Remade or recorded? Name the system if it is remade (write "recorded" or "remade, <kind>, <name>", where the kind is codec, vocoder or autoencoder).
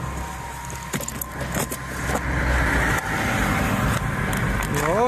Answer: recorded